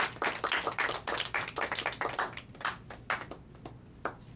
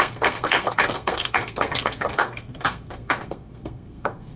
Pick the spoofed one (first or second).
second